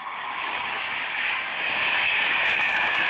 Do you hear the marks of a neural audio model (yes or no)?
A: yes